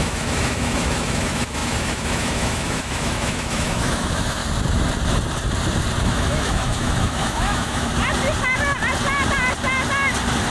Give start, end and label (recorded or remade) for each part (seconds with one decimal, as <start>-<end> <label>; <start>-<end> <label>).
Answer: 0.0-4.4 remade; 4.4-6.0 recorded; 6.0-7.9 remade; 7.9-10.5 recorded